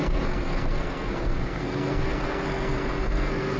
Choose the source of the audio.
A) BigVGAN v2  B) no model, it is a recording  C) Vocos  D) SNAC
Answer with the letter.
D